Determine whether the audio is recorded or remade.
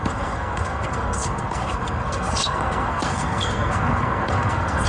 remade